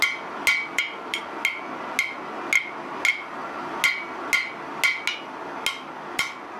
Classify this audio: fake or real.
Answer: real